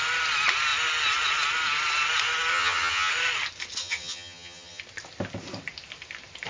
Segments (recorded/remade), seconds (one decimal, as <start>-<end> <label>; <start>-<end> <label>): 0.0-2.5 recorded; 2.5-3.1 remade; 3.1-3.8 recorded; 3.8-4.8 remade; 4.8-6.5 recorded